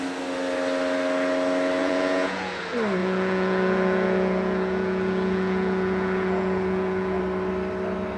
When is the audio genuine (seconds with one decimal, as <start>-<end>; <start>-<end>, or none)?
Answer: 0.0-1.8; 2.6-3.0; 7.2-8.2